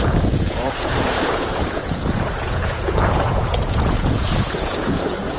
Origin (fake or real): fake